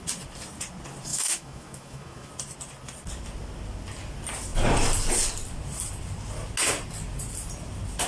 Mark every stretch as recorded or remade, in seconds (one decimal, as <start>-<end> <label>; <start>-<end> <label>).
0.0-1.1 recorded; 1.1-2.3 remade; 2.3-8.1 recorded